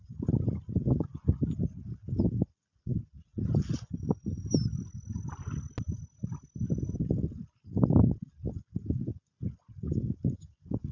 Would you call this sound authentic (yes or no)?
yes